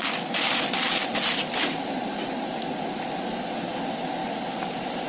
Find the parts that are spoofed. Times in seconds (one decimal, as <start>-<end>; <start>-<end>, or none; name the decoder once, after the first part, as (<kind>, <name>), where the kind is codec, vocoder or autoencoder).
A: none